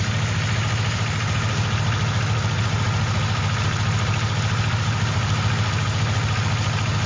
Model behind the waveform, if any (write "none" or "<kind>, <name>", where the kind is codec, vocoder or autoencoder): none